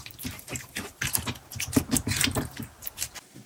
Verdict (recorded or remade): recorded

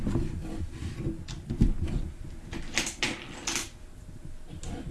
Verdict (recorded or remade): recorded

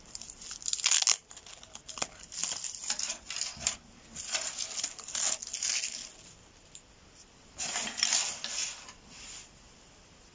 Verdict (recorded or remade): recorded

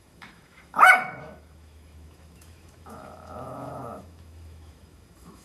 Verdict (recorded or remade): remade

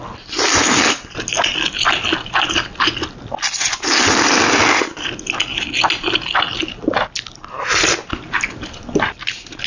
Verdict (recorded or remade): recorded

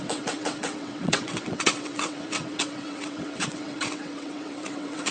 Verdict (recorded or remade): remade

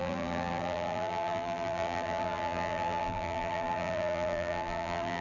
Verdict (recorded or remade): remade